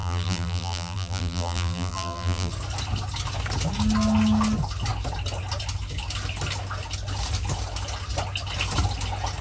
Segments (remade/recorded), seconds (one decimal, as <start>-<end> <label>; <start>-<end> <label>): 0.0-2.5 remade; 2.5-9.4 recorded